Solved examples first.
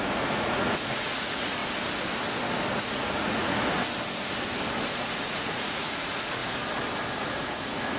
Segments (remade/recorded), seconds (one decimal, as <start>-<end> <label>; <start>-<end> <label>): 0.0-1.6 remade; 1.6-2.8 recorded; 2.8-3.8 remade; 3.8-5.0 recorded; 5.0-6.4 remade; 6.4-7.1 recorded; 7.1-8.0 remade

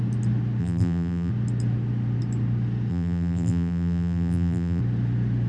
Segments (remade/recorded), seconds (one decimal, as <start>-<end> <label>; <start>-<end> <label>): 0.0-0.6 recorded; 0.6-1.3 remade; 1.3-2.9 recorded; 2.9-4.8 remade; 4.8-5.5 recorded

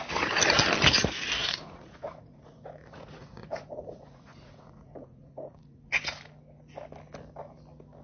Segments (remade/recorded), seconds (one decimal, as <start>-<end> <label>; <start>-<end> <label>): 0.0-1.4 recorded; 1.4-6.2 remade; 6.2-8.0 recorded

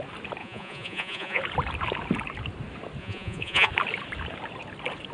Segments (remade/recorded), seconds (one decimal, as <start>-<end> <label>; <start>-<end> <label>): 0.0-0.4 recorded; 0.4-1.4 remade; 1.4-3.0 recorded; 3.0-3.7 remade; 3.7-5.1 recorded

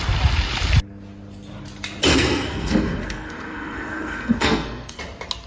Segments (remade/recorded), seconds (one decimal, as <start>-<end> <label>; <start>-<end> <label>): 0.0-2.1 recorded; 2.1-5.0 remade; 5.0-5.5 recorded

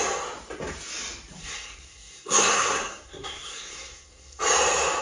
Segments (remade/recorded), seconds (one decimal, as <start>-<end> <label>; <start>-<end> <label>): 0.0-1.4 recorded; 1.4-4.4 remade; 4.4-5.0 recorded